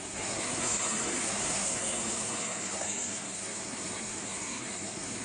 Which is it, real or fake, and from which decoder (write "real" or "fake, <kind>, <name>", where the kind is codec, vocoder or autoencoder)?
fake, codec, SNAC